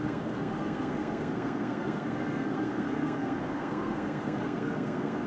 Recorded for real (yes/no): no